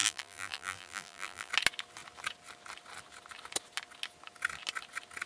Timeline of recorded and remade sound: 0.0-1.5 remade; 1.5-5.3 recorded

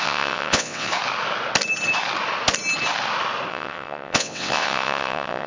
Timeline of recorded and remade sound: 0.0-0.9 remade; 0.9-3.5 recorded; 3.5-5.5 remade